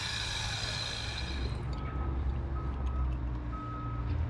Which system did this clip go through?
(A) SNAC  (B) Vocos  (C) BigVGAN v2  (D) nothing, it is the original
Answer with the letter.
D